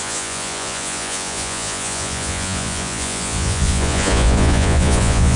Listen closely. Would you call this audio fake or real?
fake